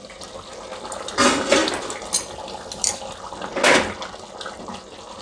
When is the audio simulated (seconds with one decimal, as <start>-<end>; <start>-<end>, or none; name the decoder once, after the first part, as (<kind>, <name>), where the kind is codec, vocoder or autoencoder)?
none